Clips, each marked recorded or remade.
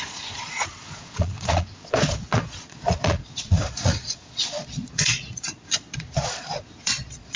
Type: remade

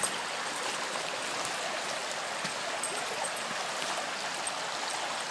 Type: recorded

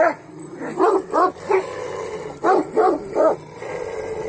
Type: recorded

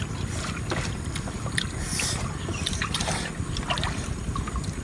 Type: recorded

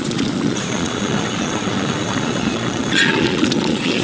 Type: remade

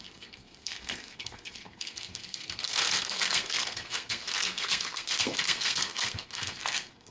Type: remade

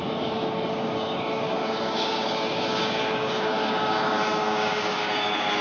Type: remade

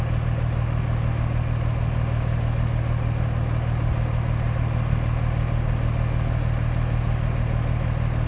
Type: recorded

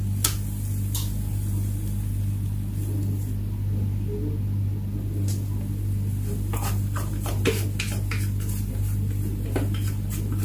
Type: recorded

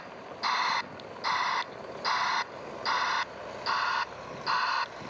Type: recorded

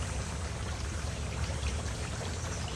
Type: remade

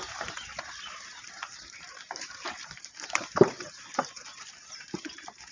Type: remade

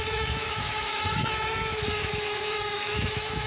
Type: remade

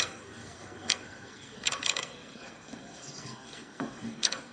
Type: remade